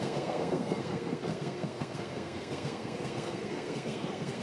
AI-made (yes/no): yes